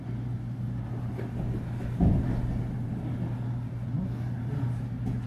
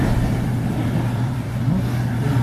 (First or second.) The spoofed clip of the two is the second